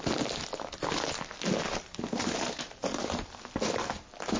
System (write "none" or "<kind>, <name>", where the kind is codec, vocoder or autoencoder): none